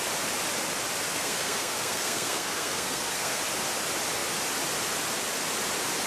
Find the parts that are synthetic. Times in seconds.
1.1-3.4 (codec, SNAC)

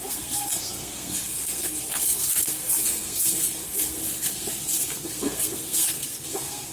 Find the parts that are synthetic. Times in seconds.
0.0-6.7 (codec, SNAC)

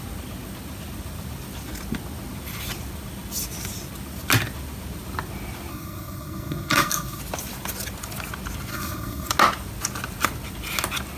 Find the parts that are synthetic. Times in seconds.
5.7-7.2 (codec, SNAC); 8.7-9.3

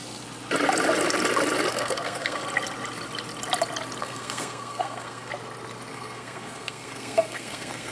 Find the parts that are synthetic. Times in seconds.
1.7-2.4 (codec, SNAC); 4.0-5.3; 5.9-7.9

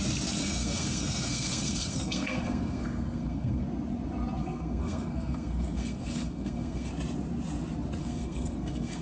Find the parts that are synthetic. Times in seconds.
0.4-3.6 (codec, SNAC); 4.4-6.9; 8.0-9.0

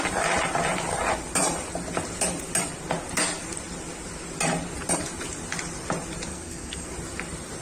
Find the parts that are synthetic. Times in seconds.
6.3-6.9 (codec, SNAC)